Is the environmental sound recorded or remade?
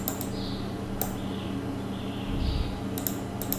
recorded